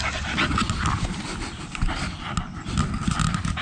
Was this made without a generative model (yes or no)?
yes